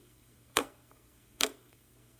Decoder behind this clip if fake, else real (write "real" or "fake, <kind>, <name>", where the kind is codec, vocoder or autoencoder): fake, codec, SNAC